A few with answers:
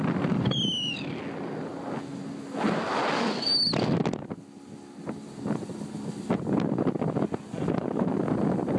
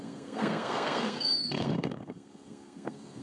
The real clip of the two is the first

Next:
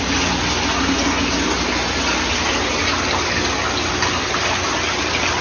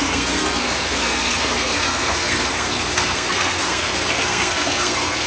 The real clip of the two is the first